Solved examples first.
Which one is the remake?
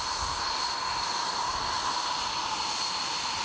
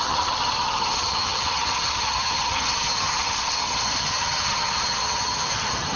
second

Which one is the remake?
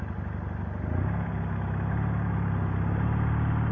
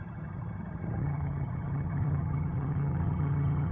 second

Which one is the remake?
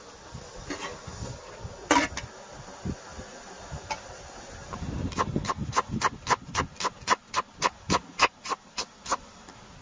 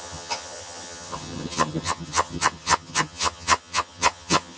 second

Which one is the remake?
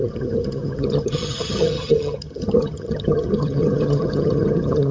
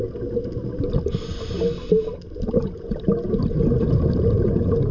first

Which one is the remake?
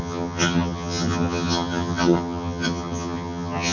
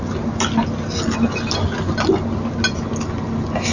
first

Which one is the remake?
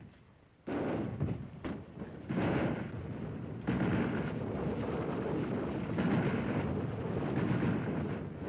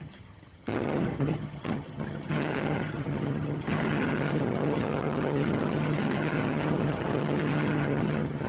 second